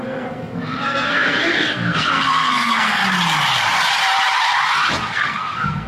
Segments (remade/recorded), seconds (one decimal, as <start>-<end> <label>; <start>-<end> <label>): 0.0-3.0 remade; 3.0-5.1 recorded; 5.1-5.9 remade